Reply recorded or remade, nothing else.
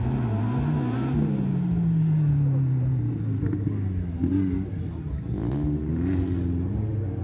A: recorded